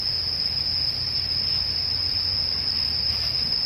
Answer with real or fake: real